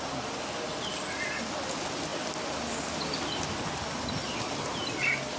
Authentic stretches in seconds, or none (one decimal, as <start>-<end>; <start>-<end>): 0.0-5.4